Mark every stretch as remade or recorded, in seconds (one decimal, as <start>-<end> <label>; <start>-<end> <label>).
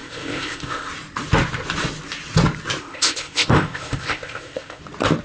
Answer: 0.0-0.9 remade; 0.9-2.8 recorded; 2.8-4.8 remade; 4.8-5.2 recorded